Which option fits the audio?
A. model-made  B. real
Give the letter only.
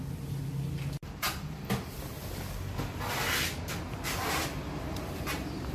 B